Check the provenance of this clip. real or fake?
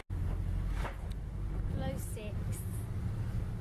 real